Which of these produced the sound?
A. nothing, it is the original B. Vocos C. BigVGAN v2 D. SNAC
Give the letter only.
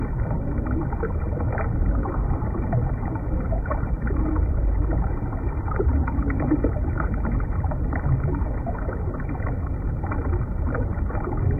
C